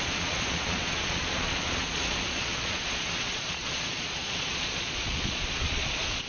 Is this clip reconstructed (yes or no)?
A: yes